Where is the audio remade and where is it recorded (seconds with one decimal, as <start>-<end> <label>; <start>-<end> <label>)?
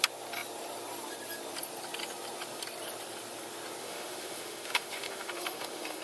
0.0-3.8 recorded; 3.8-6.0 remade